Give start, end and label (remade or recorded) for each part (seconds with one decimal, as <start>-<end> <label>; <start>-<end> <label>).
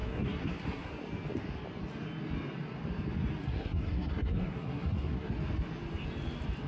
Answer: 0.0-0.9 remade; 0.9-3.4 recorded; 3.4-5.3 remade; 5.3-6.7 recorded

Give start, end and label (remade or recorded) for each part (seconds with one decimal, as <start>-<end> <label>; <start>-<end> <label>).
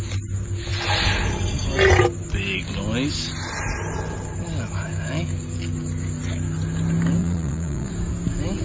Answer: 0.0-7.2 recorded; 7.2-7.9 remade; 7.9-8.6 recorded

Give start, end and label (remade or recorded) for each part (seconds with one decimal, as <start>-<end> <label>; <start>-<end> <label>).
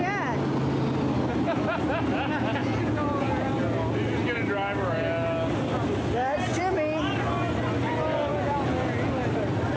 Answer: 0.0-2.6 recorded; 2.6-3.5 remade; 3.5-8.3 recorded; 8.3-9.1 remade; 9.1-9.8 recorded